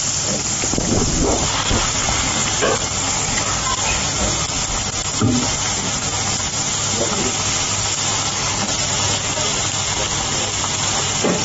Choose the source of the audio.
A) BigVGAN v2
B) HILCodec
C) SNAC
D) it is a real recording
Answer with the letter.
D